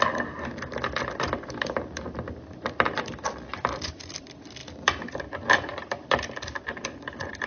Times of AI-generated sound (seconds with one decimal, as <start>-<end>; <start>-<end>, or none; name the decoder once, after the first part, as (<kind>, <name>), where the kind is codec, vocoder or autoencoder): 0.0-4.6 (vocoder, BigVGAN v2); 6.7-7.5